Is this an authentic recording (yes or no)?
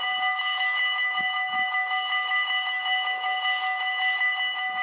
no